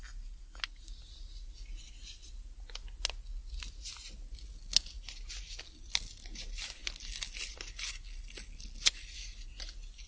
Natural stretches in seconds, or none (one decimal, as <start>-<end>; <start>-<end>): 0.0-10.1